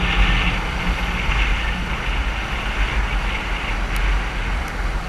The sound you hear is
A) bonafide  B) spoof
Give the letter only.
A